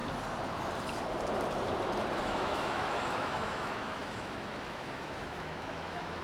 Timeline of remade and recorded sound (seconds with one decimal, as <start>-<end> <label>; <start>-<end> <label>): 0.0-2.1 recorded; 2.1-6.2 remade